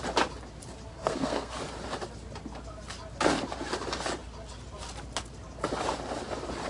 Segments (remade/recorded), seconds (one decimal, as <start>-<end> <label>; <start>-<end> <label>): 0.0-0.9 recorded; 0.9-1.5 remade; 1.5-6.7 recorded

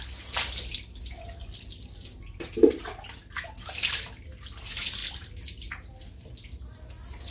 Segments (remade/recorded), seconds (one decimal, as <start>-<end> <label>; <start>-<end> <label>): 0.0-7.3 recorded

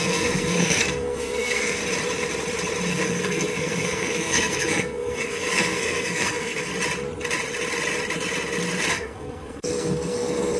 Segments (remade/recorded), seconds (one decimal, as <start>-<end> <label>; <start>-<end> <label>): 0.0-1.8 remade; 1.8-2.9 recorded; 2.9-6.7 remade; 6.7-8.9 recorded; 8.9-10.6 remade

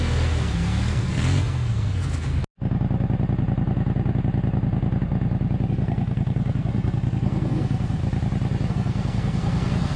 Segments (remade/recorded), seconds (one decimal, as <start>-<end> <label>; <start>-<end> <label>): 0.0-2.4 remade; 2.4-5.7 recorded; 5.7-8.0 remade; 8.0-8.7 recorded; 8.7-10.0 remade

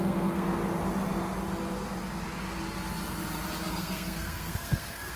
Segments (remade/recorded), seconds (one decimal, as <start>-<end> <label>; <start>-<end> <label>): 0.0-0.6 remade; 0.6-3.7 recorded; 3.7-5.2 remade